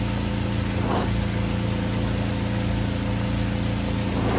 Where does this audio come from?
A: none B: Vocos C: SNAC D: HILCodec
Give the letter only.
A